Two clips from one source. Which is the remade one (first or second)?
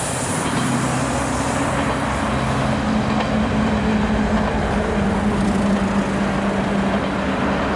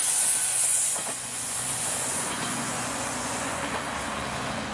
second